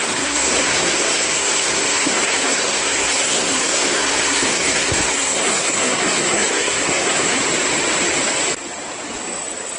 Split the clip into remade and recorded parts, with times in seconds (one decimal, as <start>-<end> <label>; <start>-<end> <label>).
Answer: 0.0-7.4 remade; 7.4-9.8 recorded